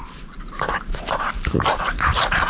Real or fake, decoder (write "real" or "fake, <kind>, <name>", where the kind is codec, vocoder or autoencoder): fake, vocoder, BigVGAN v2